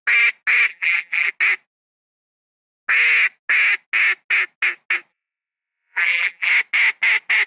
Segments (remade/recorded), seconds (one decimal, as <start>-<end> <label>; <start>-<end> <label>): 0.0-0.7 recorded; 0.7-1.3 remade; 1.3-5.1 recorded; 5.1-6.5 remade; 6.5-7.5 recorded